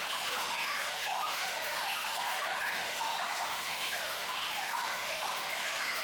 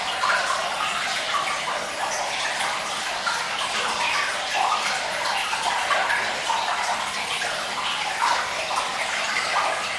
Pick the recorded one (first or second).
second